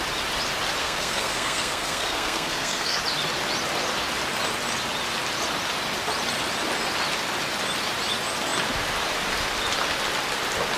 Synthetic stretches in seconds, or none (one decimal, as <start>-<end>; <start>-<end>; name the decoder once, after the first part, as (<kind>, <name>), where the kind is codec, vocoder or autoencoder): 0.8-3.0 (codec, SNAC)